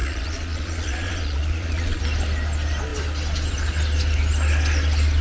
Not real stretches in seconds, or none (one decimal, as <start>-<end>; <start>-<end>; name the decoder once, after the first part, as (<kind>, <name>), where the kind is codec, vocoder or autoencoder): 0.0-2.0 (vocoder, Vocos)